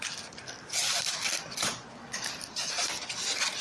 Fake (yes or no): yes